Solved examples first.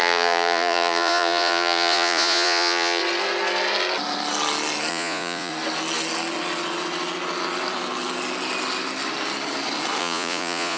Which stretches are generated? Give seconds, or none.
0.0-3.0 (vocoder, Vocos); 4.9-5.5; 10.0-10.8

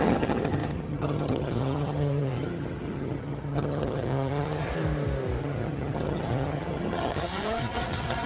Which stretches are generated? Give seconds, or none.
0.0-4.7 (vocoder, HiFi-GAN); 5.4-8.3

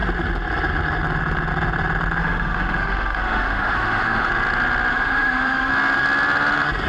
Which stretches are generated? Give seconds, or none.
2.2-4.3 (autoencoder, DAC-VAE); 4.9-5.7

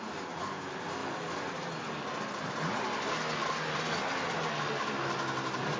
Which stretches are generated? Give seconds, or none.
none